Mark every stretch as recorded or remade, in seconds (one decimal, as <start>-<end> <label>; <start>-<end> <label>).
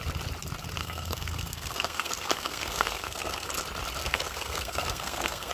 0.0-0.8 recorded; 0.8-3.5 remade; 3.5-4.0 recorded; 4.0-5.5 remade